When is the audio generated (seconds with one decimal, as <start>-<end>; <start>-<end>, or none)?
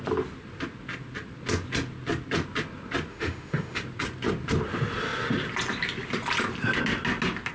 3.1-3.8